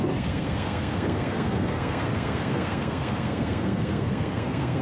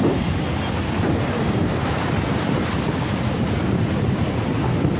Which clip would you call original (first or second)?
second